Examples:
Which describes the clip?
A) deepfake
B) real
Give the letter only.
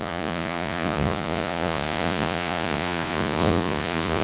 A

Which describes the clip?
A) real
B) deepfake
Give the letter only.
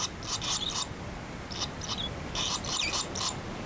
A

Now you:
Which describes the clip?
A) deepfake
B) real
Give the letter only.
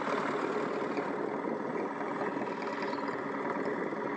B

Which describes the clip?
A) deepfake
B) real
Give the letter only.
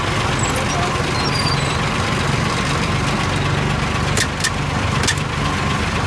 B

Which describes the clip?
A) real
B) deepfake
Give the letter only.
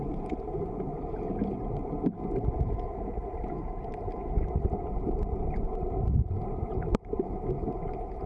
A